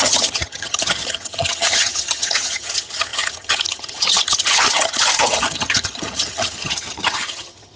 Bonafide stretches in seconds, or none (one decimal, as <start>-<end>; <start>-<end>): none